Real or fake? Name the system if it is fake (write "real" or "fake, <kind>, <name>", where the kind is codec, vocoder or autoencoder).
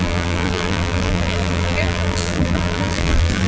fake, vocoder, BigVGAN v2